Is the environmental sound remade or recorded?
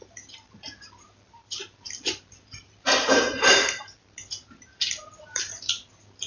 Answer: remade